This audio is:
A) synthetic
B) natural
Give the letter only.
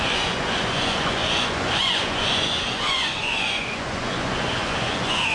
A